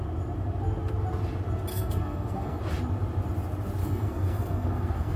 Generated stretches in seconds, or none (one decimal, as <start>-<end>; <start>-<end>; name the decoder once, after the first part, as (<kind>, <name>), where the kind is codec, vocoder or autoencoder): 1.7-2.6 (codec, SNAC); 3.8-5.2